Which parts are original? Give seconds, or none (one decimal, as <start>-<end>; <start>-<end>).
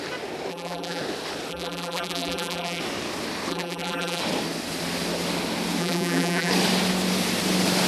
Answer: 0.0-0.5; 1.0-1.5; 2.8-3.5; 4.2-5.8; 6.5-7.9